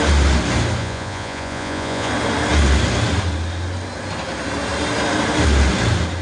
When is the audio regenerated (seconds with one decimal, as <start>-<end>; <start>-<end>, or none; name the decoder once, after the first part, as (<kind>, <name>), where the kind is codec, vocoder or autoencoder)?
0.8-2.1 (vocoder, Vocos)